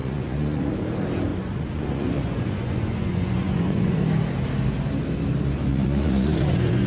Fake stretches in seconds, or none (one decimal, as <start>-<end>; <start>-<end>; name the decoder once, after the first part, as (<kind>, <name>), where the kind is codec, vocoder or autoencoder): 0.0-0.7 (vocoder, Vocos); 1.3-4.0; 5.7-6.9